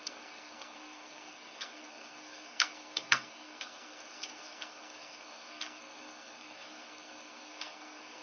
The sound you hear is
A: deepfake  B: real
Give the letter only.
A